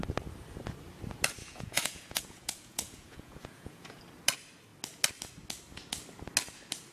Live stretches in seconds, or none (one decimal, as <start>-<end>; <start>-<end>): 0.0-1.4; 4.0-6.9